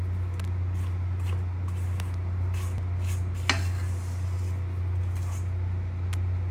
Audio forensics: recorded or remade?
recorded